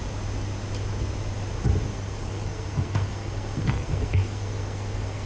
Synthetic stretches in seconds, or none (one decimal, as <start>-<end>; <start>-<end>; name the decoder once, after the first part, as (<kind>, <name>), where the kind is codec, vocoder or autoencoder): 1.9-5.3 (codec, SNAC)